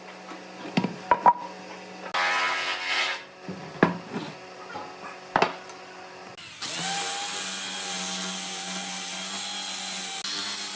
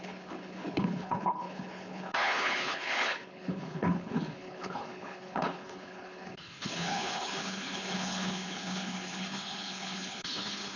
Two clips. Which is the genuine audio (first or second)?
first